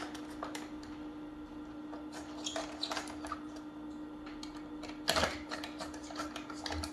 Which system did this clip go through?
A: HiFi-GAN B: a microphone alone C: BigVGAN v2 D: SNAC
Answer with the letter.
B